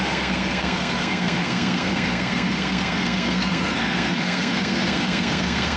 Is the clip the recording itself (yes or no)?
no